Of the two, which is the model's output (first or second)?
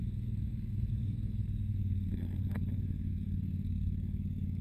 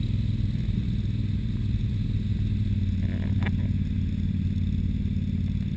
first